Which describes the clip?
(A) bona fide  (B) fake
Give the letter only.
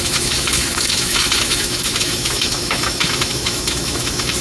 B